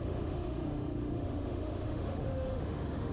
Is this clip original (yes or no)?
no